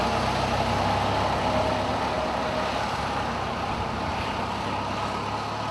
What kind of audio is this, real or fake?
real